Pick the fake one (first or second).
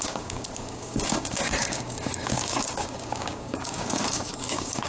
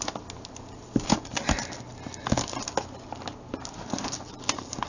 first